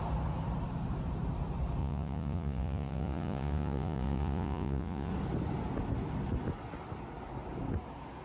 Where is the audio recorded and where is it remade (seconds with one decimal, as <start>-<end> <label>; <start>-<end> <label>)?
0.0-1.8 recorded; 1.8-5.1 remade; 5.1-8.2 recorded